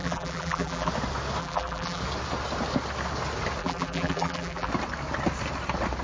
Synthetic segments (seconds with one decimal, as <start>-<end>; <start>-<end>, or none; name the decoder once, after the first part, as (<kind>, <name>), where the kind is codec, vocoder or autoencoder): 0.0-0.9 (vocoder, BigVGAN v2); 1.4-2.0; 3.6-4.7